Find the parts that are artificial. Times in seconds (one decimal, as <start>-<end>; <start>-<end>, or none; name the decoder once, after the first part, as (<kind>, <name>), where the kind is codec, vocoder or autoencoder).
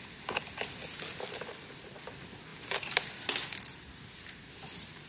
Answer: none